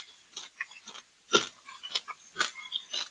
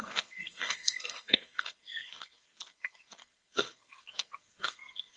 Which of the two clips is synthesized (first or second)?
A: second